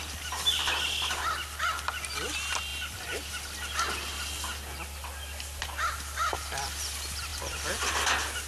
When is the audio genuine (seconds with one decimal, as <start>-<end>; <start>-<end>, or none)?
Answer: 0.0-2.7; 3.3-7.3; 7.9-8.5